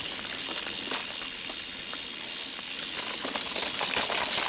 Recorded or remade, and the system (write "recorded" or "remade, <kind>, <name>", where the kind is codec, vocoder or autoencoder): recorded